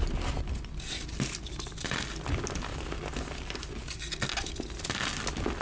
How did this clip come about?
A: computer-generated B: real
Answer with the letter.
B